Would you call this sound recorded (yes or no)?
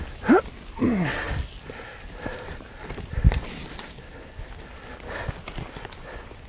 yes